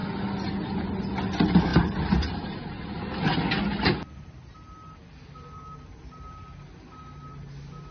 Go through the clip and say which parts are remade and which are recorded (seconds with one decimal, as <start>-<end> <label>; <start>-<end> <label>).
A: 0.0-7.9 recorded